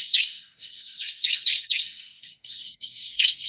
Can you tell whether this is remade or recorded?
remade